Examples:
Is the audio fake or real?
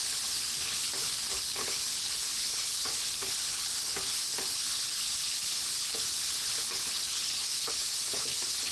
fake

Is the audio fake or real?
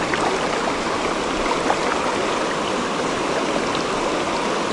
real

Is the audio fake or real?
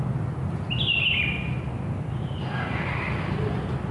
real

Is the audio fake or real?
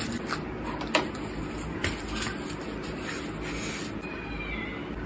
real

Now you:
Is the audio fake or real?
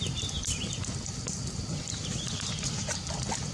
real